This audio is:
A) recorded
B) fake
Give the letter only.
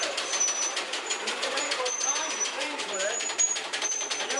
B